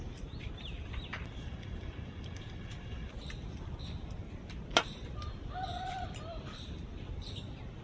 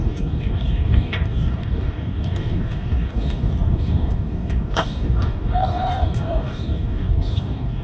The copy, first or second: second